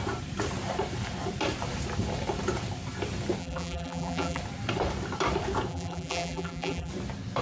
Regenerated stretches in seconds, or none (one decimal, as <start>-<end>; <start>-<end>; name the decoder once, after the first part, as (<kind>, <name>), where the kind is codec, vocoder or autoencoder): 3.4-4.4 (vocoder, BigVGAN v2); 5.7-6.9